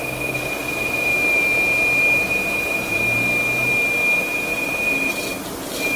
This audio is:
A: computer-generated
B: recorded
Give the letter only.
B